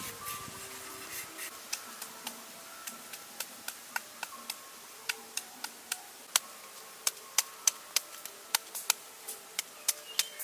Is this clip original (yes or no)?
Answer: yes